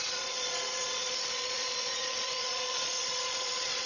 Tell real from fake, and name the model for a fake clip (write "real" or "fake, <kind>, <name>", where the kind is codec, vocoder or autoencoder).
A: fake, vocoder, Vocos